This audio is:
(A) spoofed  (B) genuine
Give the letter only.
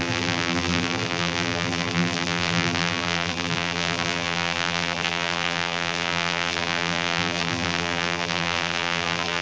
A